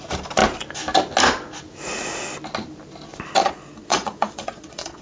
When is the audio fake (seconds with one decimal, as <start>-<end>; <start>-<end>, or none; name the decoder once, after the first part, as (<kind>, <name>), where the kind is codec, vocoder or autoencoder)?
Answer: 3.4-5.0 (vocoder, Vocos)